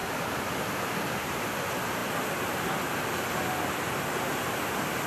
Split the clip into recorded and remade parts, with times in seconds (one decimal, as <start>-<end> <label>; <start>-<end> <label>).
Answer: 0.0-1.4 remade; 1.4-5.1 recorded